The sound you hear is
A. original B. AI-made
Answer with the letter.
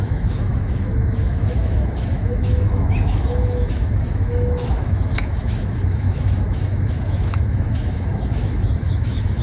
B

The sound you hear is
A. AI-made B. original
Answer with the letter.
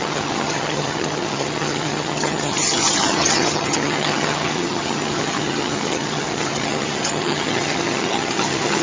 A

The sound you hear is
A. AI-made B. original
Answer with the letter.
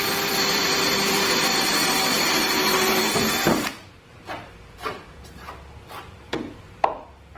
A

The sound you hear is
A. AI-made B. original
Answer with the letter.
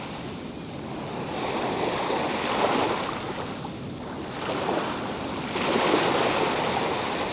B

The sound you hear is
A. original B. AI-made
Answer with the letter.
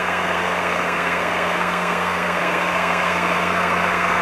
B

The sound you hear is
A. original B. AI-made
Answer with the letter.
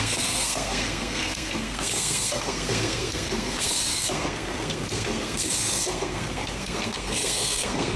B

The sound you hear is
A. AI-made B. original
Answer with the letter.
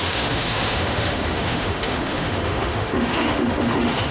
A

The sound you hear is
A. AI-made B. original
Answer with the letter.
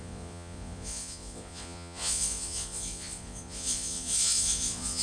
A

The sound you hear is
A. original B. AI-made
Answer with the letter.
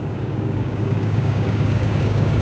B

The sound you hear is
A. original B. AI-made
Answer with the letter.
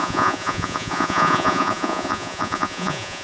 B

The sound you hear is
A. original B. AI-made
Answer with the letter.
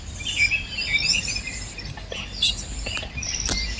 A